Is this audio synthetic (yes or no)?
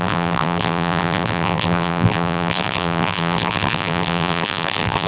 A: yes